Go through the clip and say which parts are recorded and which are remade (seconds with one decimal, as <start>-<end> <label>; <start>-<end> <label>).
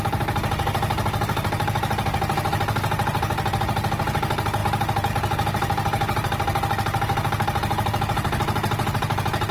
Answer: 0.0-9.5 recorded